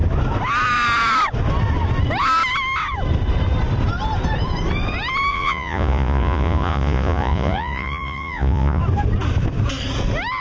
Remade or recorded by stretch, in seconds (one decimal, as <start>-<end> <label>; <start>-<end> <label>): 0.0-5.3 recorded; 5.3-8.8 remade; 8.8-10.4 recorded